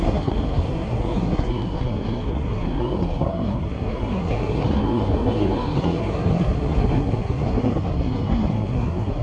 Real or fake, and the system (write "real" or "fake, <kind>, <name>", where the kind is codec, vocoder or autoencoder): fake, codec, SNAC